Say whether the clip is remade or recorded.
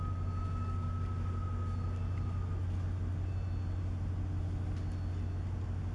recorded